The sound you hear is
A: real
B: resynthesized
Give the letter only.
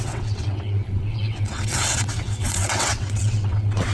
B